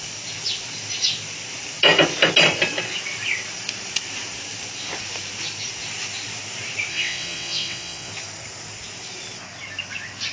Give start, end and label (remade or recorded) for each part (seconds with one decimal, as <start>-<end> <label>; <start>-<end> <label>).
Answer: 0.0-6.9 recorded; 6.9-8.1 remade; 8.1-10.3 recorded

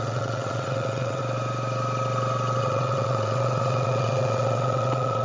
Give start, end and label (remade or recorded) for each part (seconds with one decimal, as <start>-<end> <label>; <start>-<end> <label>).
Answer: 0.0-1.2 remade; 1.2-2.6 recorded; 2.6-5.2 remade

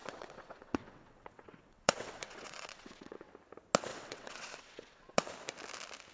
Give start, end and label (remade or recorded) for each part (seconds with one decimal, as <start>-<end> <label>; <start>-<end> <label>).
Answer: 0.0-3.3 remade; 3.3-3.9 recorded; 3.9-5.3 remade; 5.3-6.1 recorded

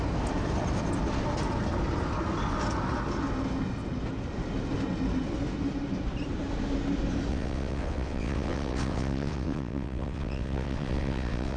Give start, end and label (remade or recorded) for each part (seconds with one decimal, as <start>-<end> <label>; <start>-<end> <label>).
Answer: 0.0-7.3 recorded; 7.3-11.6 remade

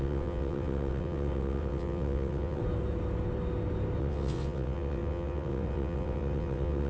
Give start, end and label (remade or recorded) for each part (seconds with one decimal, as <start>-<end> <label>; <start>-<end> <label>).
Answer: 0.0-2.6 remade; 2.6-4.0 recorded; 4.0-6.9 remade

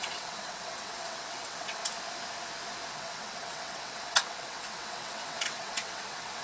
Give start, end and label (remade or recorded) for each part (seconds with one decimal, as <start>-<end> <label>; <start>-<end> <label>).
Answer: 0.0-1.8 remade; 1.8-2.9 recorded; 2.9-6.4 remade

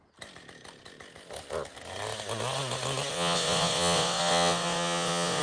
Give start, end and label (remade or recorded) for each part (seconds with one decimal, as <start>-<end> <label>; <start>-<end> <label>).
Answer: 0.0-3.1 recorded; 3.1-5.4 remade